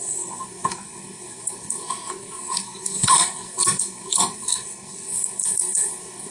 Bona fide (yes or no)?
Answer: no